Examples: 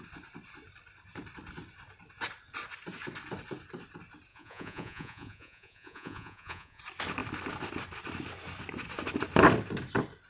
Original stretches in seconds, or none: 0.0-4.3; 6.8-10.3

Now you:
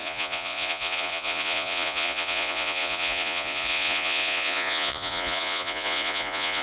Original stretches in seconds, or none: none

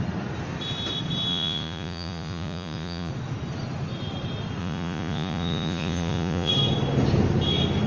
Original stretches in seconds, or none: 0.0-1.3; 3.1-4.6; 6.5-7.9

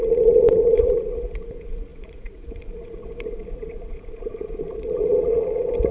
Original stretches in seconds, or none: none